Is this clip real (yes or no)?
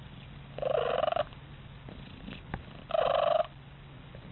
yes